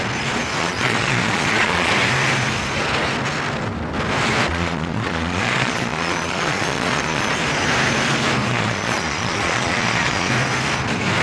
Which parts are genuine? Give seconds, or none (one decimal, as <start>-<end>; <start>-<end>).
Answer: 0.0-0.6; 1.9-4.5; 7.3-8.5; 10.3-11.2